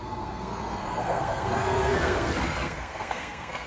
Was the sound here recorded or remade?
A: remade